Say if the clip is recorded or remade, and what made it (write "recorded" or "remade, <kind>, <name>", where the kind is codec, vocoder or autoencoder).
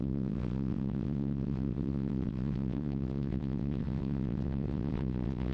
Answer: remade, vocoder, WaveNeXt